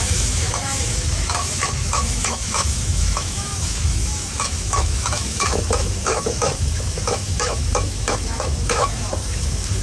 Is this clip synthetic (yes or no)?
yes